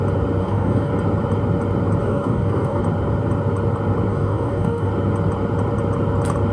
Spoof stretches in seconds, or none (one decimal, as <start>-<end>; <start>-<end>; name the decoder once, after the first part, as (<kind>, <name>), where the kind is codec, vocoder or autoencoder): 0.4-0.9 (codec, DAC); 2.0-2.8; 4.1-4.9